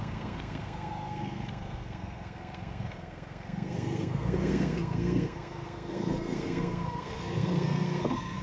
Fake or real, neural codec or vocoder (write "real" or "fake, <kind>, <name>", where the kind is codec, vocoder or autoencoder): fake, codec, SNAC